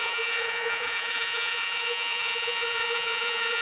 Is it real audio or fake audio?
fake